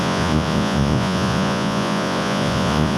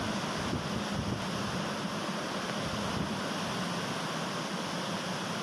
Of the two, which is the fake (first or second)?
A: first